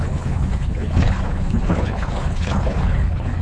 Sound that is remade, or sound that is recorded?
remade